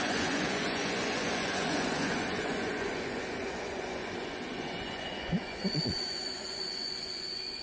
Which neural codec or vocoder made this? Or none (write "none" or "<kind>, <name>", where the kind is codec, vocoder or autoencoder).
vocoder, Vocos